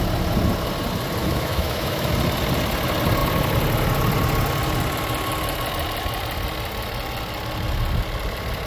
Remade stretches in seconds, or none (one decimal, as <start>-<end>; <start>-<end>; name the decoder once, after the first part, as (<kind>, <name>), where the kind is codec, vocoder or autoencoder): 1.2-2.1 (autoencoder, DAC-VAE)